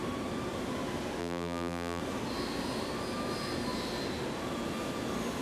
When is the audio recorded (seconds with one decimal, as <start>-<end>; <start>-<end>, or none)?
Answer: 0.0-1.2; 2.0-5.4